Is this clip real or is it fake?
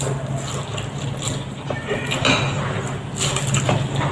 real